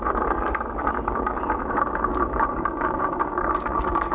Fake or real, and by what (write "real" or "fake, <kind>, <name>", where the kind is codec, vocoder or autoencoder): fake, codec, DAC